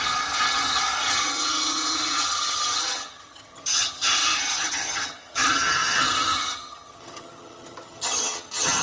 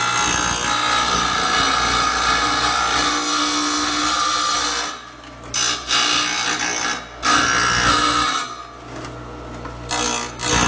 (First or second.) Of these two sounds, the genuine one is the second